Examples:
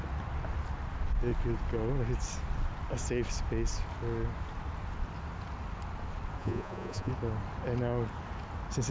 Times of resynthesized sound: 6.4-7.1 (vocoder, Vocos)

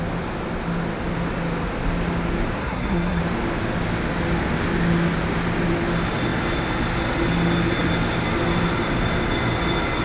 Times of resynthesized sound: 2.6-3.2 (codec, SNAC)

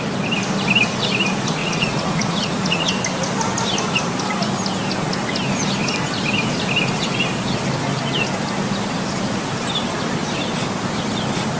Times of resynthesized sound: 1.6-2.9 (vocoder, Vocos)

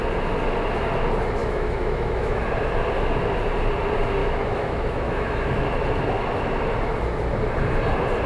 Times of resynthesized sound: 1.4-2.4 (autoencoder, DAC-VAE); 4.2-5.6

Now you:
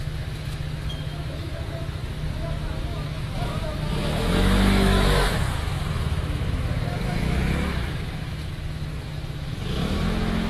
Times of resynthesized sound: 0.0-10.5 (autoencoder, DAC-VAE)

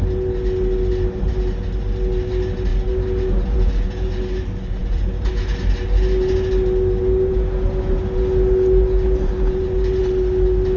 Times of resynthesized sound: 2.7-4.1 (vocoder, Vocos); 4.8-5.3; 7.3-10.0